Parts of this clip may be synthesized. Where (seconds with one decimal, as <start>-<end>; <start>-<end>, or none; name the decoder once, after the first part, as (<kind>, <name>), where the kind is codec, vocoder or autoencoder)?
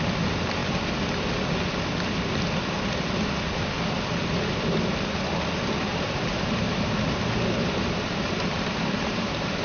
5.9-9.6 (vocoder, BigVGAN v2)